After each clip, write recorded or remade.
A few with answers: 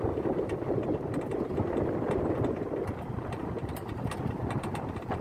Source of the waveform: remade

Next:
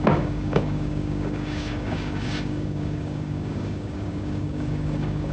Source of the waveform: remade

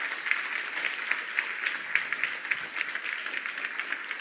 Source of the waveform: recorded